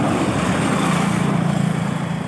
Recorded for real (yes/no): yes